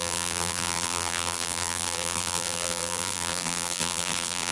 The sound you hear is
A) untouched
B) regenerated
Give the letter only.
B